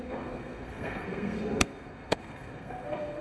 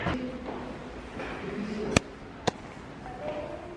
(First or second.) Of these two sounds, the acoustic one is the second